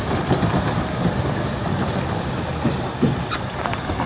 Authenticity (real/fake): real